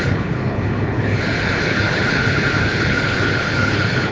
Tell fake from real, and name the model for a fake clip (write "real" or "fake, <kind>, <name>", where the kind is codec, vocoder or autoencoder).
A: fake, codec, HILCodec